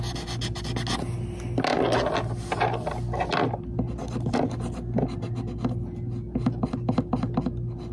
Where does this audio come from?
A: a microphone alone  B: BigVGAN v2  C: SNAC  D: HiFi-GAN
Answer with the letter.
A